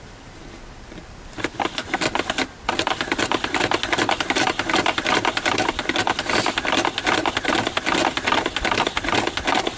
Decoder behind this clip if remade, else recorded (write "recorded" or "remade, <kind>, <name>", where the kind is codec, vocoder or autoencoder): remade, vocoder, BigVGAN v2